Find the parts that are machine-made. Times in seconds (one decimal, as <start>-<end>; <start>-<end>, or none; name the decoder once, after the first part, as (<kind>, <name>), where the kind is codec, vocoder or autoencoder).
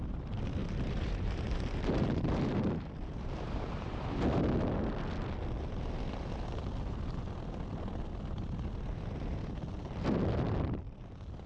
0.6-4.1 (vocoder, BigVGAN v2)